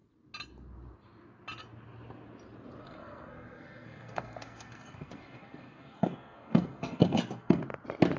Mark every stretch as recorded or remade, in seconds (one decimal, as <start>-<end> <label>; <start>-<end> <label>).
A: 0.0-2.8 recorded; 2.8-7.6 remade; 7.6-8.2 recorded